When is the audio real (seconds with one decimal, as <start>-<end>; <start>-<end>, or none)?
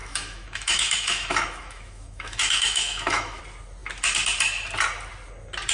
3.4-5.7